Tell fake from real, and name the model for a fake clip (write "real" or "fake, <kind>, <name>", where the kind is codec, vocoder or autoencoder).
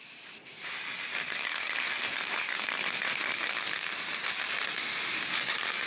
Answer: real